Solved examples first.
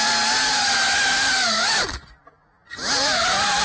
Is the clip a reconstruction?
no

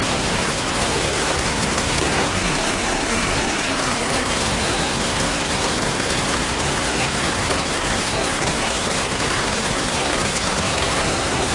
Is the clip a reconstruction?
yes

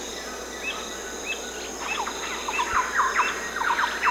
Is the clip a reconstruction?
no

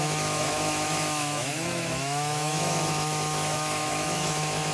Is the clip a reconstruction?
yes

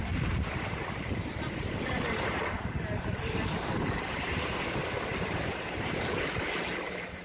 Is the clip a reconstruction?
yes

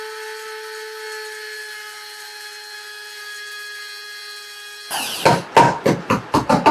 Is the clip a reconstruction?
no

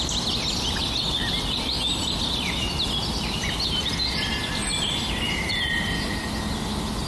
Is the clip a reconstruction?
no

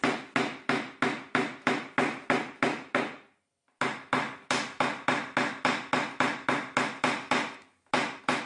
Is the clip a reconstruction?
no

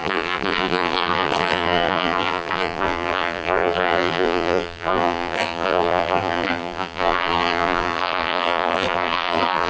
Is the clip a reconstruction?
yes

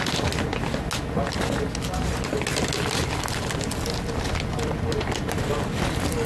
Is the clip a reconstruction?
no